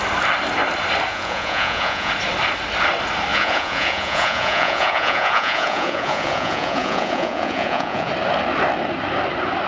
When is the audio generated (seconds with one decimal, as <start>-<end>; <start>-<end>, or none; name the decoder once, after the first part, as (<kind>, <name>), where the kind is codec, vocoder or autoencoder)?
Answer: 1.1-2.1 (vocoder, Vocos); 3.3-8.1